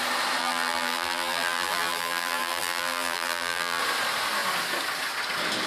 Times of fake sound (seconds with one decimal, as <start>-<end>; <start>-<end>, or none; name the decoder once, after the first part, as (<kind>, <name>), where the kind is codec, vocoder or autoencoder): 0.4-3.8 (vocoder, BigVGAN v2)